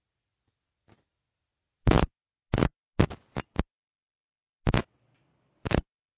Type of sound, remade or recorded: recorded